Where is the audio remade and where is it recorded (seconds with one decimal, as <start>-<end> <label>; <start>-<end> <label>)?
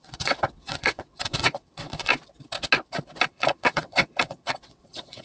0.0-2.1 remade; 2.1-3.3 recorded; 3.3-5.2 remade